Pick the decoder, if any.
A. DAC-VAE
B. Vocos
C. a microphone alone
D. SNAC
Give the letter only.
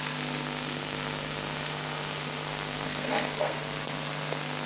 D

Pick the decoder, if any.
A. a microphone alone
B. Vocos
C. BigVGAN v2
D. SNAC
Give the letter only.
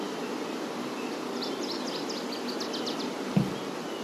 A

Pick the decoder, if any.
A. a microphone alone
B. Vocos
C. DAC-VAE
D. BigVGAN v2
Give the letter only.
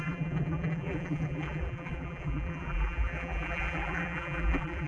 D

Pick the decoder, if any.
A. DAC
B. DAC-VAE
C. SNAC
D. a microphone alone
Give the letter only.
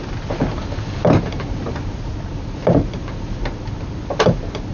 D